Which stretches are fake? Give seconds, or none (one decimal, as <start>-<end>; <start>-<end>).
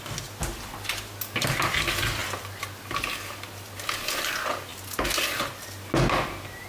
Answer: none